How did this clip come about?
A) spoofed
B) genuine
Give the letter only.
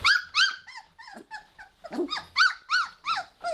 B